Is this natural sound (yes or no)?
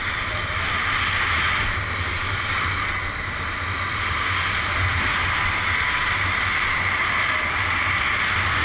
yes